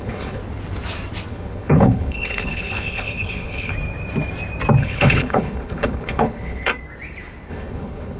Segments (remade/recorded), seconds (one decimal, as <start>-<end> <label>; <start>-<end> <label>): 0.0-0.4 remade; 0.4-1.3 recorded; 1.3-3.7 remade; 3.7-4.8 recorded; 4.8-6.7 remade; 6.7-7.5 recorded; 7.5-8.2 remade